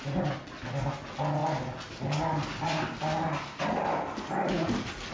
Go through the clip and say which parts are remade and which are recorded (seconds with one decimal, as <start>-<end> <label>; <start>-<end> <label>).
0.0-5.1 recorded